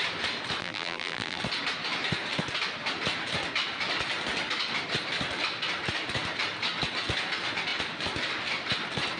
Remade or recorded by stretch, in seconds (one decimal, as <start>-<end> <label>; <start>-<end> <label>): 0.0-0.6 recorded; 0.6-1.4 remade; 1.4-9.2 recorded